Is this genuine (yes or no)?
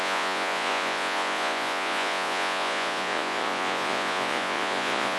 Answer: no